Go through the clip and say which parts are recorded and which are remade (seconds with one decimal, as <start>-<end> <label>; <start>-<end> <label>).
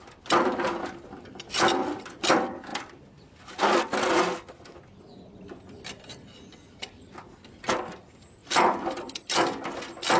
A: 0.0-2.7 recorded; 2.7-3.6 remade; 3.6-8.4 recorded; 8.4-9.2 remade; 9.2-10.2 recorded